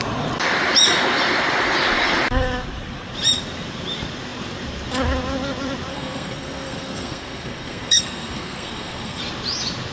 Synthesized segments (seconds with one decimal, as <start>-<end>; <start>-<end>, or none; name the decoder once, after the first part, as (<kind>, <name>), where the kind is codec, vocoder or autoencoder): 5.9-9.2 (codec, SNAC)